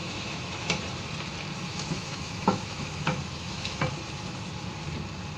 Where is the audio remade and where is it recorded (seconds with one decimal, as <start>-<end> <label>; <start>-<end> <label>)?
0.0-0.8 remade; 0.8-1.7 recorded; 1.7-3.8 remade; 3.8-5.4 recorded